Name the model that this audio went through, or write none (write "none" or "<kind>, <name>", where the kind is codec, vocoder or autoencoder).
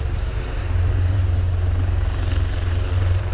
vocoder, BigVGAN v2